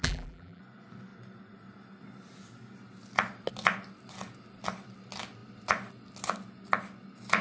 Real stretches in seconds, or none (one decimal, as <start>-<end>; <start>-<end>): 0.6-7.4